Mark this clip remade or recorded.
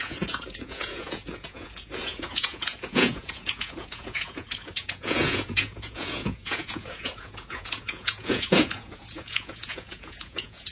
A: remade